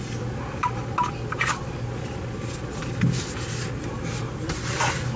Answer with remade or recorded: recorded